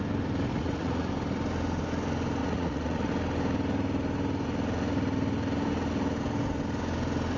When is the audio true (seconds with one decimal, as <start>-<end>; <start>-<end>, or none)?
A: 0.0-0.5; 1.1-2.4; 3.1-7.4